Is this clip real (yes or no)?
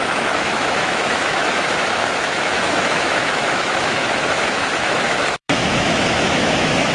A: no